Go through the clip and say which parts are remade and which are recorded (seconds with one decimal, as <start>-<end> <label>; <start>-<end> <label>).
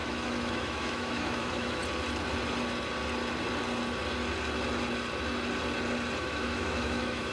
0.0-1.8 remade; 1.8-6.2 recorded; 6.2-7.3 remade